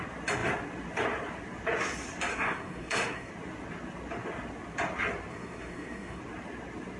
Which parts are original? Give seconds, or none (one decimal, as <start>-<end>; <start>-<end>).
0.0-2.3; 3.3-5.3; 6.2-7.0